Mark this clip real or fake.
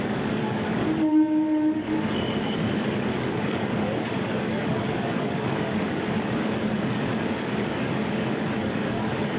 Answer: fake